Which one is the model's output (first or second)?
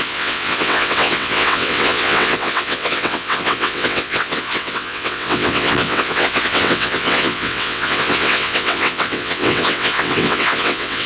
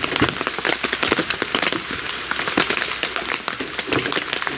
first